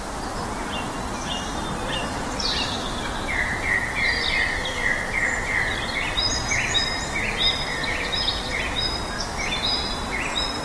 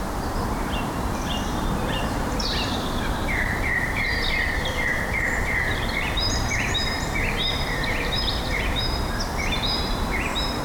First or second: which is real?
first